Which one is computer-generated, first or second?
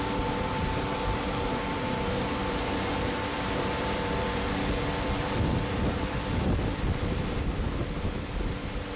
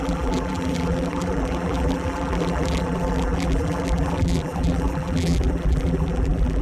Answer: second